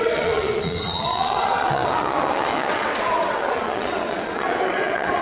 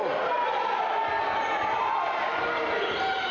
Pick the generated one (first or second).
first